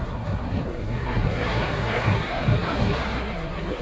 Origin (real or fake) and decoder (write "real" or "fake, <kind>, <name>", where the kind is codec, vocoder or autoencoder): fake, codec, SNAC